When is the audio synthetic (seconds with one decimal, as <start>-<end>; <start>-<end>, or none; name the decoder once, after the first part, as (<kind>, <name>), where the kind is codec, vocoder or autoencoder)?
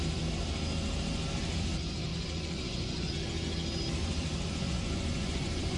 2.1-3.1 (vocoder, Vocos); 4.0-5.8